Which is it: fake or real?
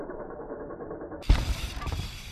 fake